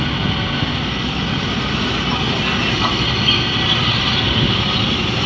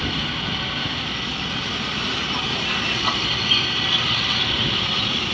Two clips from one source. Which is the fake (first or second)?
second